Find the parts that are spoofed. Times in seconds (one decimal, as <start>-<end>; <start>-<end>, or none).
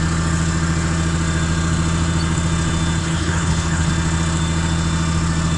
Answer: 3.0-3.9